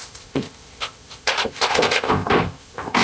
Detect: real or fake fake